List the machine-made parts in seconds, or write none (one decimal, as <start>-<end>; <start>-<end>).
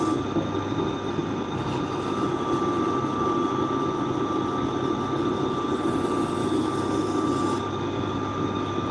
none